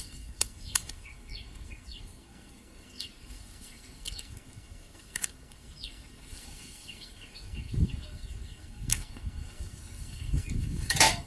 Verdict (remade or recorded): remade